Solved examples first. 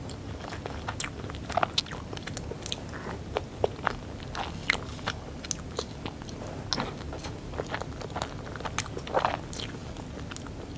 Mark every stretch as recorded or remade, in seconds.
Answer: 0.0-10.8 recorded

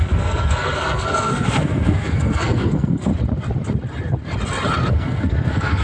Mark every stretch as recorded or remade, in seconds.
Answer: 0.0-3.1 remade; 3.1-4.9 recorded; 4.9-5.8 remade

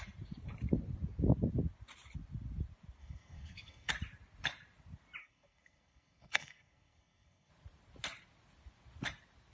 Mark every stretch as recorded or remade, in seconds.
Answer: 0.0-3.0 recorded; 3.0-3.9 remade; 3.9-5.2 recorded; 5.2-7.5 remade; 7.5-9.5 recorded

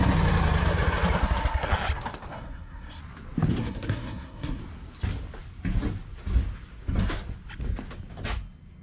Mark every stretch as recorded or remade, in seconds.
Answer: 0.0-1.2 recorded; 1.2-1.7 remade; 1.7-2.3 recorded; 2.3-3.0 remade; 3.0-3.6 recorded; 3.6-4.6 remade; 4.6-8.8 recorded

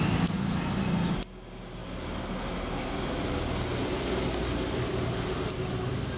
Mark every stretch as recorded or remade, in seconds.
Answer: 0.0-6.2 recorded

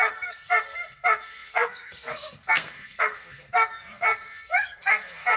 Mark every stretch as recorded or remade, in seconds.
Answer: 0.0-5.4 remade

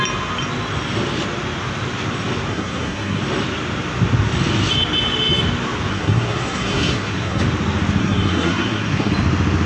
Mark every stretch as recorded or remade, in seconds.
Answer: 0.0-2.5 recorded; 2.5-3.2 remade; 3.2-5.9 recorded; 5.9-7.4 remade; 7.4-8.0 recorded; 8.0-9.1 remade; 9.1-9.7 recorded

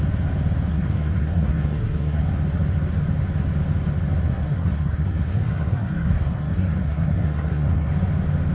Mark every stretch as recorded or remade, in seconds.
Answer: 0.0-0.7 recorded; 0.7-2.2 remade; 2.2-4.2 recorded; 4.2-7.9 remade; 7.9-8.5 recorded